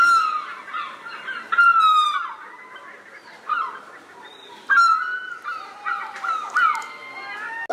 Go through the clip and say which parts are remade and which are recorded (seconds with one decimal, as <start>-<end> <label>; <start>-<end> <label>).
0.0-7.7 recorded